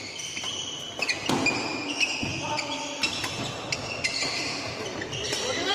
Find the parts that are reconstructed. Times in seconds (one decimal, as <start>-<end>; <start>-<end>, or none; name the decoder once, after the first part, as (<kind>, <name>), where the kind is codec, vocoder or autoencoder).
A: none